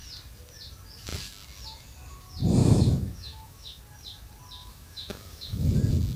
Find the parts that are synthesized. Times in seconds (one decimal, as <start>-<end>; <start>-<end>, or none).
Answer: 2.6-3.8; 4.6-5.7